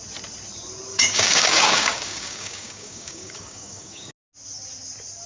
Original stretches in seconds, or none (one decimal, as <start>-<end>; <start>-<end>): 0.0-0.9; 4.1-5.3